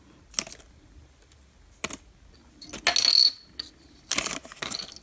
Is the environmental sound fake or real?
real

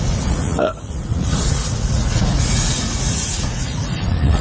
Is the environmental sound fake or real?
fake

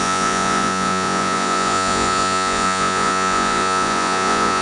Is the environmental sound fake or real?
fake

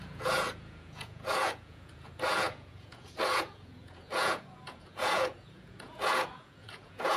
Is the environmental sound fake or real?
fake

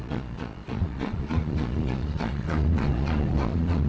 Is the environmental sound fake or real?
fake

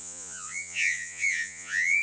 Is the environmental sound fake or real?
fake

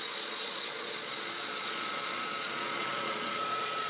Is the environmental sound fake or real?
fake